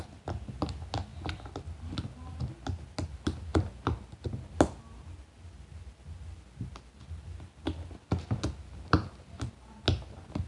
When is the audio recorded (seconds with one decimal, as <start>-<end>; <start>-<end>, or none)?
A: 0.0-10.5